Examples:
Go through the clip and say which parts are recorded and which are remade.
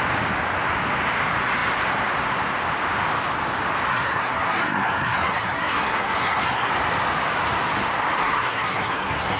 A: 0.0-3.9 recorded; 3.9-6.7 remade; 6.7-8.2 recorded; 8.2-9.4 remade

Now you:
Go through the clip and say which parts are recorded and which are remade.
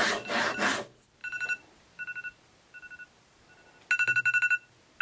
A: 0.0-5.0 recorded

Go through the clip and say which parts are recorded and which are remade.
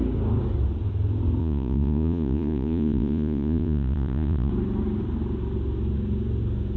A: 0.0-1.4 recorded; 1.4-4.5 remade; 4.5-6.8 recorded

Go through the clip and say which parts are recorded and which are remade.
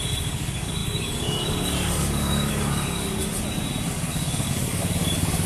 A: 0.0-3.2 remade; 3.2-3.9 recorded; 3.9-5.5 remade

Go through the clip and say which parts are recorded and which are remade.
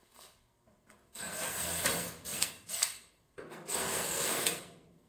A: 0.0-5.1 remade